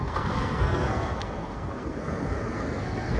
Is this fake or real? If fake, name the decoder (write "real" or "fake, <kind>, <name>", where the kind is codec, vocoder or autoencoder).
fake, codec, SNAC